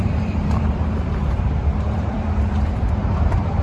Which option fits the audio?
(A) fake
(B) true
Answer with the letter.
A